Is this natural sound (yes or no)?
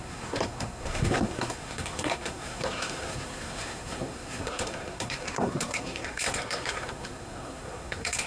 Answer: no